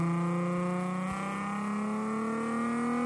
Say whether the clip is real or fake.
real